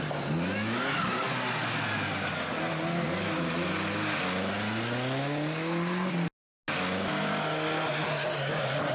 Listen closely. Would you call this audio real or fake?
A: real